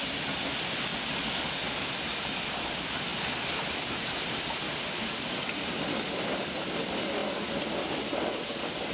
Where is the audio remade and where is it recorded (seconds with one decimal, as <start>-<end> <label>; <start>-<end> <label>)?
0.0-0.9 remade; 0.9-1.5 recorded; 1.5-8.9 remade